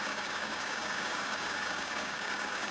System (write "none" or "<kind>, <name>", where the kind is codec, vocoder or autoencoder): codec, DAC